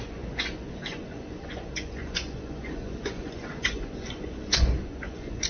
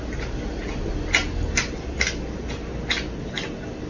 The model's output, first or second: first